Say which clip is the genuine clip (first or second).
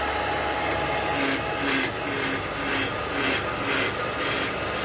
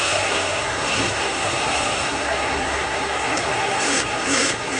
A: first